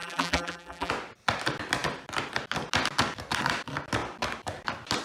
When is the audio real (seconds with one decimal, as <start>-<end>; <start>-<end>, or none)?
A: 0.9-5.0

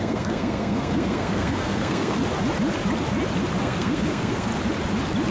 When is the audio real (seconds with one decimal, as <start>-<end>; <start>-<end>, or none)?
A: 2.2-3.6; 4.5-5.3